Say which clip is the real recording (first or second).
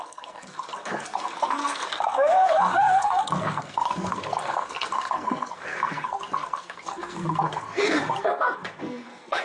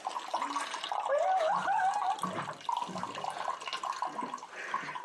second